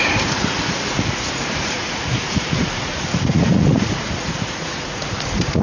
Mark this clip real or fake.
fake